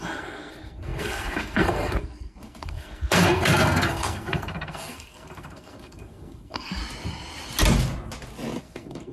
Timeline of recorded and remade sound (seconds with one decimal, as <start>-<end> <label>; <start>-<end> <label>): 0.0-6.8 remade; 6.8-8.6 recorded; 8.6-9.1 remade